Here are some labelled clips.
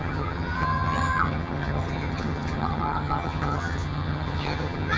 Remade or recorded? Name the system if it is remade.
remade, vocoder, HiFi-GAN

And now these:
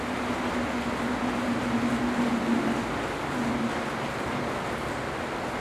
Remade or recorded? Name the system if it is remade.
recorded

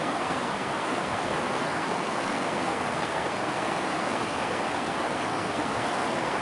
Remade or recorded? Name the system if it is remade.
remade, codec, SNAC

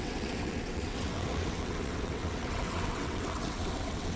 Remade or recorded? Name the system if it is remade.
remade, vocoder, WaveNeXt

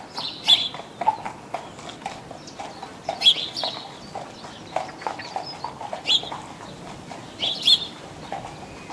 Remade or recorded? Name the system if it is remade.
recorded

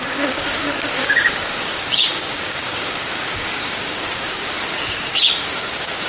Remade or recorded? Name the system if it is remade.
remade, codec, DAC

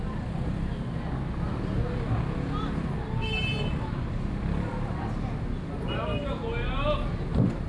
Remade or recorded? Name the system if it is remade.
recorded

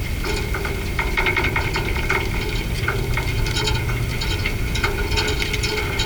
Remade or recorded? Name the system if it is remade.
recorded